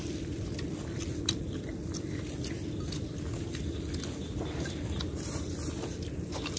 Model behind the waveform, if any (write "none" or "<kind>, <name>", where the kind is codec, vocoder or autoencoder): none